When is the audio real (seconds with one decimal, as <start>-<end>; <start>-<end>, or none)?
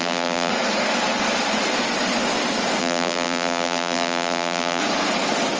0.5-2.8; 4.8-5.6